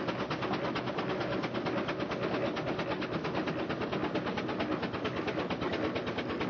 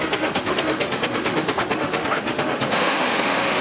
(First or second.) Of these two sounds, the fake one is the second